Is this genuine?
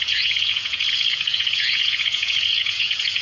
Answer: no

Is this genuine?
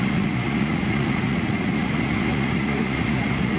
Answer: no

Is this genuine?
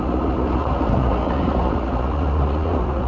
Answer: no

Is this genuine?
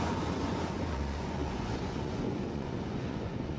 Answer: no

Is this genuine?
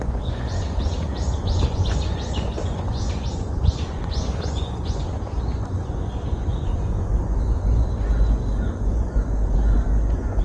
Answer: no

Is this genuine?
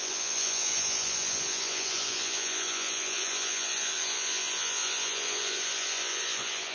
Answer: no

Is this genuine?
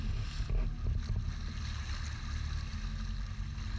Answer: yes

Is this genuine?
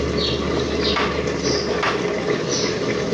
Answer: yes